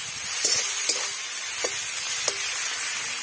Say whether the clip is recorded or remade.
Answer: recorded